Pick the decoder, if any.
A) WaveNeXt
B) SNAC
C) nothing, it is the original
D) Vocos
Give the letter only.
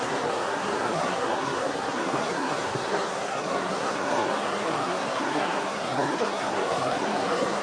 B